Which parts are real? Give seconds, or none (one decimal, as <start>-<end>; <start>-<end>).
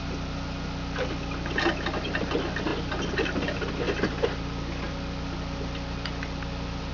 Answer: 0.0-6.9